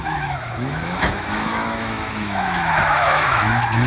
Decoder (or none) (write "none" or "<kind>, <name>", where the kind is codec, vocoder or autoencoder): autoencoder, DAC-VAE